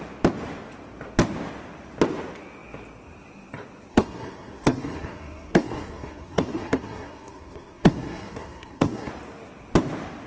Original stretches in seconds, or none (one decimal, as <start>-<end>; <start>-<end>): 0.0-3.9; 9.1-10.3